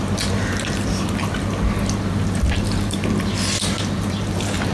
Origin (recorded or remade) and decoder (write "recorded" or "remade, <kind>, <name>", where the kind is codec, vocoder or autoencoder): recorded